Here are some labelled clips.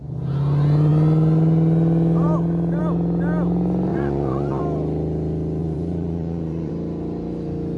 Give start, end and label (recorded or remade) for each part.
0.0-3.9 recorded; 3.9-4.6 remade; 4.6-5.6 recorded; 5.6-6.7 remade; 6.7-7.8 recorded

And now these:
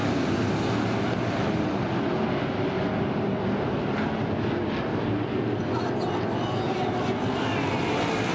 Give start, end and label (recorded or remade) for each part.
0.0-8.3 recorded

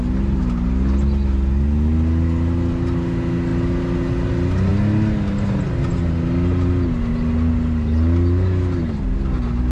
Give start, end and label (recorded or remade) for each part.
0.0-9.7 recorded

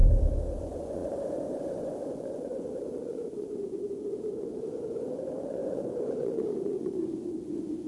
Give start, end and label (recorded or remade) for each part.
0.0-0.6 recorded; 0.6-7.9 remade

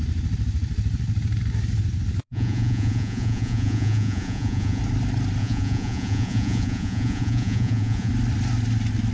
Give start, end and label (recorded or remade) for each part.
0.0-2.2 recorded; 2.2-4.8 remade; 4.8-5.4 recorded; 5.4-8.1 remade; 8.1-9.1 recorded

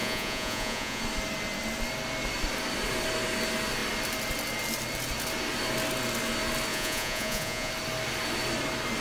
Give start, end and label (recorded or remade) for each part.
0.0-1.0 remade; 1.0-6.7 recorded; 6.7-7.7 remade; 7.7-9.0 recorded